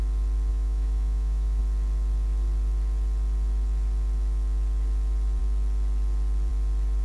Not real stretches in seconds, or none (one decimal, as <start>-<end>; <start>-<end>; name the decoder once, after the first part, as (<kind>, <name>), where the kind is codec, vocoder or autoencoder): 0.5-1.6 (autoencoder, DAC-VAE)